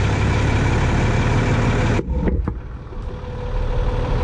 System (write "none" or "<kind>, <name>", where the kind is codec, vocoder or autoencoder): none